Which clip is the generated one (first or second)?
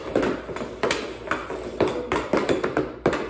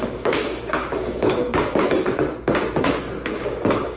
second